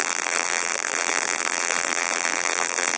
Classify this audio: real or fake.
fake